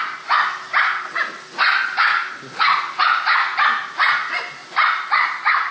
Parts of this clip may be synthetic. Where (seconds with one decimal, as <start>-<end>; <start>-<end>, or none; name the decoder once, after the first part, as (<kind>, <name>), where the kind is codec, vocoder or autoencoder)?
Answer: none